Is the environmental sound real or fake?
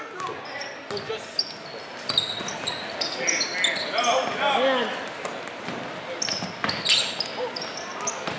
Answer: real